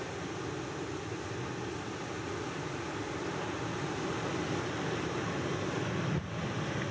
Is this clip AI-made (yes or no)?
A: no